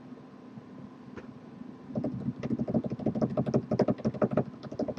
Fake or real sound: real